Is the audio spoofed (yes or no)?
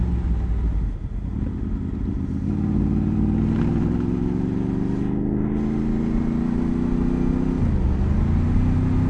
no